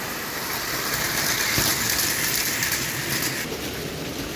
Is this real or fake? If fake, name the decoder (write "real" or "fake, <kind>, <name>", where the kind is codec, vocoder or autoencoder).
real